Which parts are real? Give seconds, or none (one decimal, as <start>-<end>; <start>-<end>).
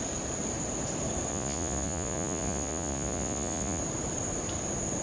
0.0-1.3; 3.8-5.0